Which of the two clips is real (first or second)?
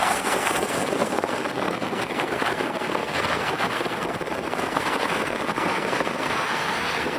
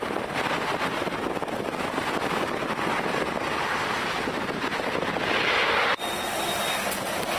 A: second